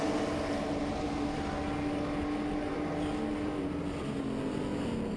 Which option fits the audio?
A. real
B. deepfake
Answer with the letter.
A